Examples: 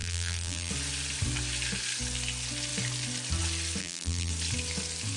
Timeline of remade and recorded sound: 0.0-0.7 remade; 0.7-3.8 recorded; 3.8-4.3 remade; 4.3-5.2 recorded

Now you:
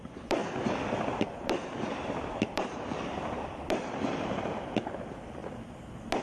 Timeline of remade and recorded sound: 0.0-0.4 remade; 0.4-1.2 recorded; 1.2-5.4 remade; 5.4-6.2 recorded

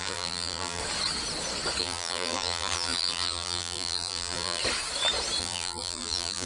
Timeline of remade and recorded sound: 0.0-0.8 remade; 0.8-1.8 recorded; 1.8-4.6 remade; 4.6-5.4 recorded; 5.4-6.5 remade

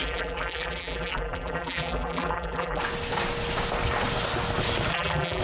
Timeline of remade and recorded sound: 0.0-2.8 remade; 2.8-4.9 recorded; 4.9-5.4 remade